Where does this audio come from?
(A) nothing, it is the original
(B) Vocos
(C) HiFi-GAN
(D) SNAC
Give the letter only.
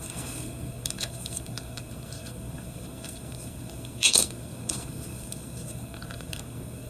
D